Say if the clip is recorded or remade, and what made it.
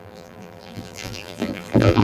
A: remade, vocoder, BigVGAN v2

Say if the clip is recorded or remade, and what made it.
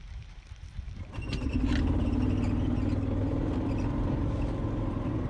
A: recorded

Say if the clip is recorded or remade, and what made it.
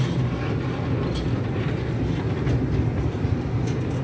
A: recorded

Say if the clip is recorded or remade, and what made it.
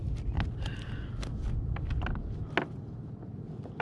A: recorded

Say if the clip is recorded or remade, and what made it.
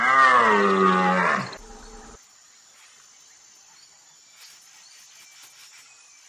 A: recorded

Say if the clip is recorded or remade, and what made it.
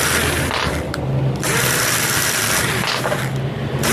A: recorded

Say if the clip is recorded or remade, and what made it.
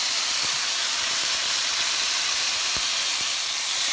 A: remade, vocoder, BigVGAN v2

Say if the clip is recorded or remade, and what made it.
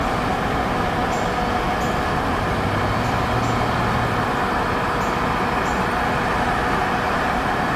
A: recorded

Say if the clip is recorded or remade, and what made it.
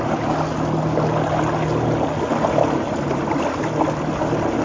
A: recorded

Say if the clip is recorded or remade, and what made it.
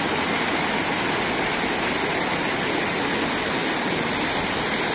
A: recorded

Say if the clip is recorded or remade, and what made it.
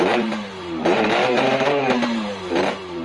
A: remade, vocoder, BigVGAN v2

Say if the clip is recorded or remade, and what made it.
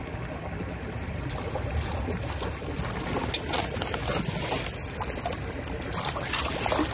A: recorded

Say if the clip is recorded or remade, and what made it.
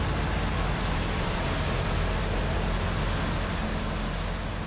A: recorded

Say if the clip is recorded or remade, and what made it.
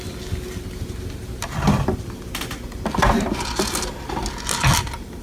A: recorded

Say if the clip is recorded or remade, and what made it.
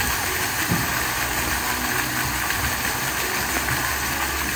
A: recorded